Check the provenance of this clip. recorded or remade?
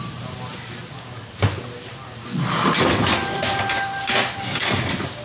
recorded